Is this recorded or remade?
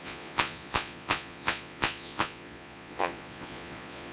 remade